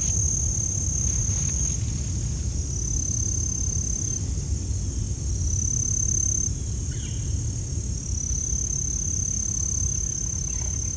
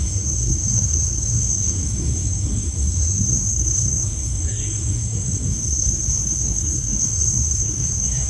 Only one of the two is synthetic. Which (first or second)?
second